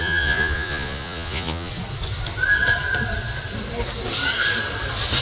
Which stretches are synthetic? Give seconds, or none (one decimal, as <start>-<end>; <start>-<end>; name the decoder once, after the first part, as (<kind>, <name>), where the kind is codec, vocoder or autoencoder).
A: 0.0-1.7 (vocoder, Vocos)